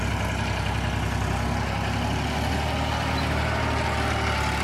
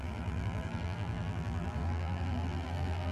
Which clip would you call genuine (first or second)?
first